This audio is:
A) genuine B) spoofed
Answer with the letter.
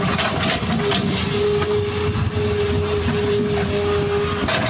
A